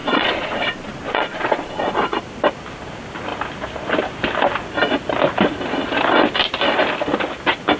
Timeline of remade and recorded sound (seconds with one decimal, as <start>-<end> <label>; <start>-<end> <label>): 0.0-2.2 remade; 2.2-7.8 recorded